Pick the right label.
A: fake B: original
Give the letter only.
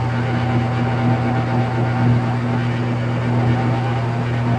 B